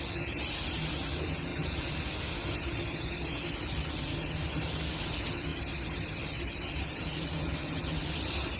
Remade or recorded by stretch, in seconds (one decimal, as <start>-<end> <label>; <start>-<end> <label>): 0.0-8.6 recorded